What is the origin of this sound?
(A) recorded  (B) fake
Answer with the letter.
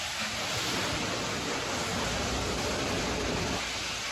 A